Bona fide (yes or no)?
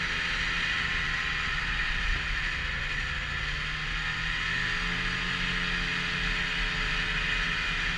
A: yes